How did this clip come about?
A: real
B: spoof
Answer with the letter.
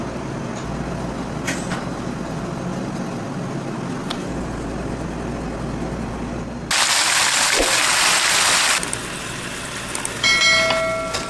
A